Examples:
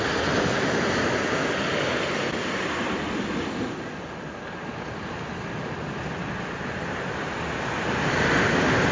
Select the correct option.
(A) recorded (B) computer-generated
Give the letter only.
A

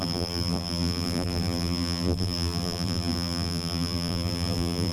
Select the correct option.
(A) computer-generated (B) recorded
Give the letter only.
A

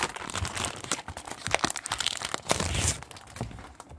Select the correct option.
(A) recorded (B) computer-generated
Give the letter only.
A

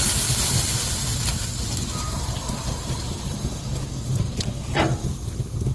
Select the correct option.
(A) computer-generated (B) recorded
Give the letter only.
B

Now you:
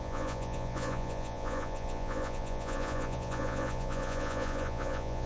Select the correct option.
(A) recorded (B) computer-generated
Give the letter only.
B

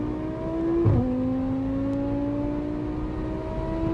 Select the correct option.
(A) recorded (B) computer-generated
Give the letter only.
A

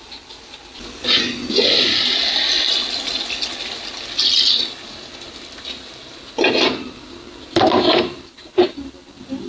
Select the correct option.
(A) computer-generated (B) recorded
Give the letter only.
B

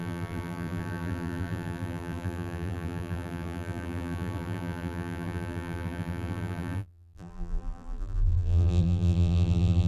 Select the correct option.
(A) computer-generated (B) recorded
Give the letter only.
A